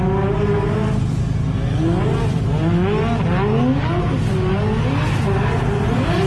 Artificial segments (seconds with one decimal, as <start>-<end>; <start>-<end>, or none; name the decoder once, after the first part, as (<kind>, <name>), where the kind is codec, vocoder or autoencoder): none